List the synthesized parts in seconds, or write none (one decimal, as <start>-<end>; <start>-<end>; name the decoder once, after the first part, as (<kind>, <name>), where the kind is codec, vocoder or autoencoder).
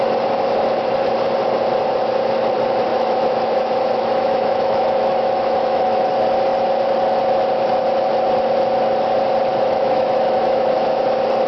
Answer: 2.9-6.1 (autoencoder, DAC-VAE); 9.5-10.7